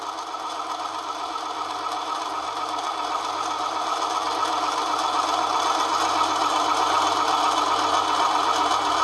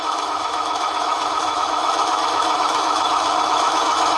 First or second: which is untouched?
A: first